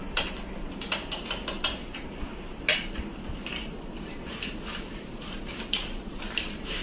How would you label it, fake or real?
fake